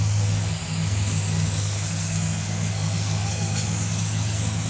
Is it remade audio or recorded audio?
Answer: remade